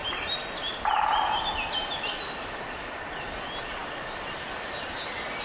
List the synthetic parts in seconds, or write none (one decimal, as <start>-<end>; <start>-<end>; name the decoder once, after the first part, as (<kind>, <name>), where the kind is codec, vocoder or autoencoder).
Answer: 3.8-5.0 (vocoder, BigVGAN v2)